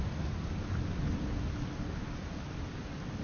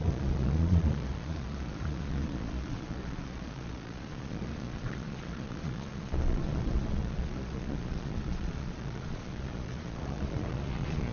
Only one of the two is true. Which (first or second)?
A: first